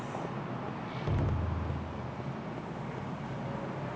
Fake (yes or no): no